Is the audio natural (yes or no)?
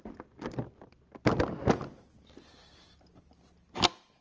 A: yes